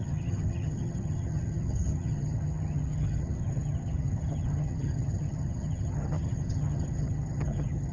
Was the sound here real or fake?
fake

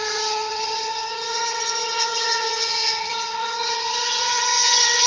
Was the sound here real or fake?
fake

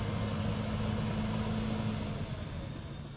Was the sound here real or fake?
real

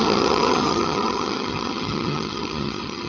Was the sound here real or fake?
fake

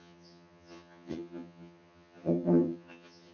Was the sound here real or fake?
fake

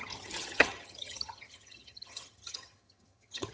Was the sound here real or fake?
fake